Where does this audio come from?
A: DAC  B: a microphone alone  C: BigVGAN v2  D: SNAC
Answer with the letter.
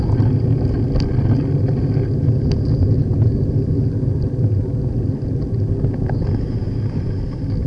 B